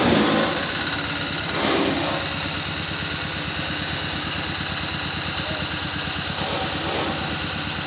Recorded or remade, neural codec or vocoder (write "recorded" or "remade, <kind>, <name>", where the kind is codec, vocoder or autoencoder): recorded